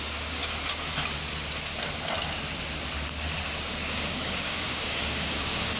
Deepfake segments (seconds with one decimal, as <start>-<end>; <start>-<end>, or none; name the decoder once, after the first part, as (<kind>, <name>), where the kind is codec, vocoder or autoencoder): 0.0-0.4 (codec, DAC); 3.9-5.8

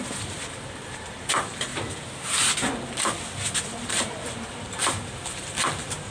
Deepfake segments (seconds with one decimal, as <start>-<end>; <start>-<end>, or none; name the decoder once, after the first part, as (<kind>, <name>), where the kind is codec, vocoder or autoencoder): 0.0-1.7 (vocoder, BigVGAN v2); 3.6-6.1

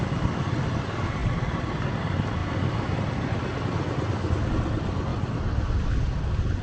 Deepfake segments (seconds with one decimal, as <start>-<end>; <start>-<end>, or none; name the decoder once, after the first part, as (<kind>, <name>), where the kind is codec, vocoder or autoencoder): 0.0-2.4 (vocoder, BigVGAN v2); 4.5-5.1; 6.0-6.6

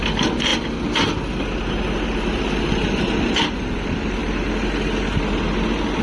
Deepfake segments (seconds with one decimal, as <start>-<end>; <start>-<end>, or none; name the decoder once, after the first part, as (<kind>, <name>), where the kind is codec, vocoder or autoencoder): none

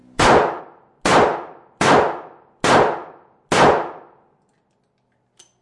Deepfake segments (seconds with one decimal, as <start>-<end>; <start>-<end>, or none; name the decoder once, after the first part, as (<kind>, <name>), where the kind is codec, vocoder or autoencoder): 0.0-0.6 (vocoder, BigVGAN v2)

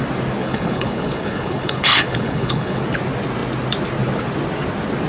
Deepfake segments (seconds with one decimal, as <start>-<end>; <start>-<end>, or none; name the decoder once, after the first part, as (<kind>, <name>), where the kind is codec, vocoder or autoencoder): 0.4-2.8 (codec, HILCodec)

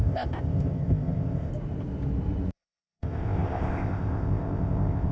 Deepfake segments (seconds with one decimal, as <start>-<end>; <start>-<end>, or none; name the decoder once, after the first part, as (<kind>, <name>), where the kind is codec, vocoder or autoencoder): 0.0-1.5 (codec, ZipCodec); 2.5-5.1

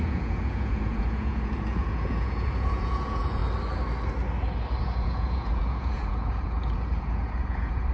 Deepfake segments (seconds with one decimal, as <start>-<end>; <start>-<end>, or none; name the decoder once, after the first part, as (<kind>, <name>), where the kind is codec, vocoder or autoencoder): 0.0-3.4 (vocoder, Vocos); 4.8-7.9